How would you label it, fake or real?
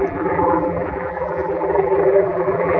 fake